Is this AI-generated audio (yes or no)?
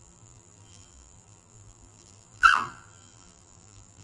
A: yes